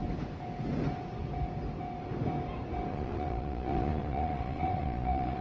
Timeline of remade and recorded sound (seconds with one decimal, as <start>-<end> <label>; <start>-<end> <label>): 0.0-2.9 recorded; 2.9-5.4 remade